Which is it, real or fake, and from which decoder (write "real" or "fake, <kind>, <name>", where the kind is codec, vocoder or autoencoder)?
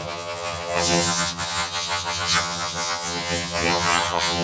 fake, vocoder, HiFi-GAN